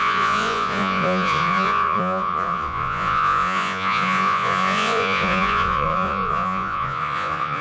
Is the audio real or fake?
fake